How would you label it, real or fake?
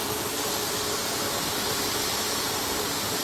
fake